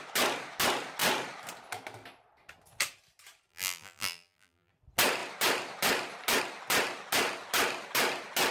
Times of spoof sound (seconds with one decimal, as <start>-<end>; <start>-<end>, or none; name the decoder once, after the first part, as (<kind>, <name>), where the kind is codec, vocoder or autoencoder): 3.5-4.7 (vocoder, BigVGAN v2)